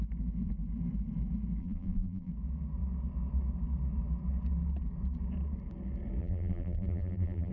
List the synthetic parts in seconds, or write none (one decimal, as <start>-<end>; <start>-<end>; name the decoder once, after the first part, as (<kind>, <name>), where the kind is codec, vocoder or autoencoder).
1.6-2.3 (vocoder, BigVGAN v2); 6.2-7.5